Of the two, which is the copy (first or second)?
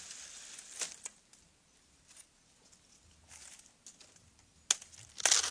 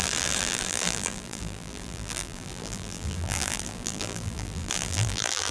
second